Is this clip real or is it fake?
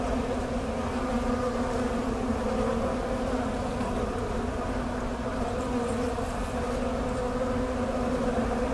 real